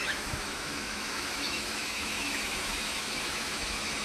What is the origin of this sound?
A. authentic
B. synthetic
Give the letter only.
B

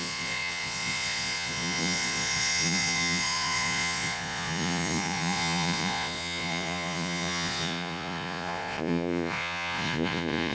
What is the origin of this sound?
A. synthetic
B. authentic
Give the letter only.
A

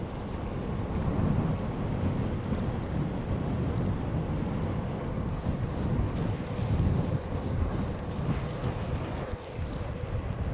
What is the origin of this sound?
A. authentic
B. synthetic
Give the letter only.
A